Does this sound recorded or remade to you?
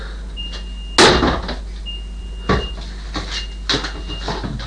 recorded